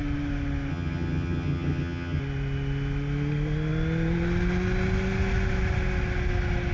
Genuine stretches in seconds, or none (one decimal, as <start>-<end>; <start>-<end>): 0.0-0.7; 2.2-6.7